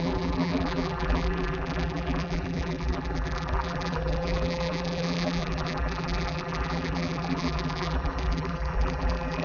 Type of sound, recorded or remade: remade